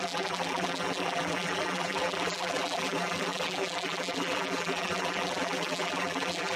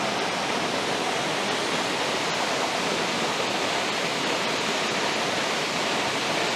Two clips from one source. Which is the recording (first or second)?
second